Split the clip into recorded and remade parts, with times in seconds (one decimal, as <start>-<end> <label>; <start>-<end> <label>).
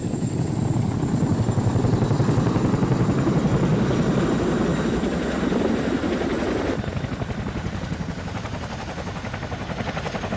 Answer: 0.0-10.4 recorded